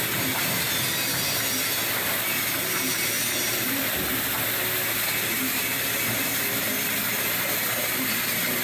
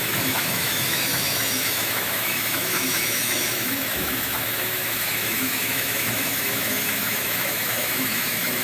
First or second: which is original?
first